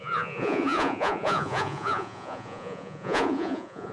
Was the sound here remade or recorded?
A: remade